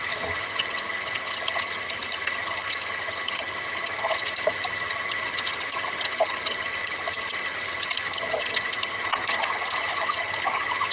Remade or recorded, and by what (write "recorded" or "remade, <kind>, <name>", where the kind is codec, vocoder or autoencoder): remade, vocoder, HiFi-GAN